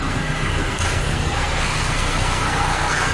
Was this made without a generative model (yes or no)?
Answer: no